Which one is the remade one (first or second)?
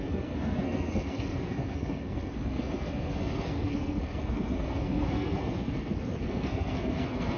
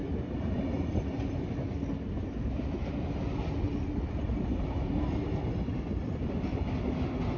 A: first